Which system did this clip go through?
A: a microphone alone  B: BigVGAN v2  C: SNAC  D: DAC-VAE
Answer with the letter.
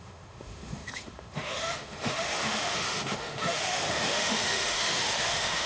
D